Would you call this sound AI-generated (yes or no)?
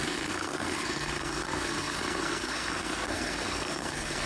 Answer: yes